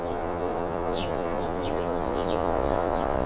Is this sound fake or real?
fake